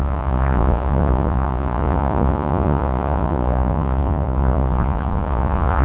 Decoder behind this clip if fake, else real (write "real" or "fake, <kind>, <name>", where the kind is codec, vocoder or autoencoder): fake, vocoder, Vocos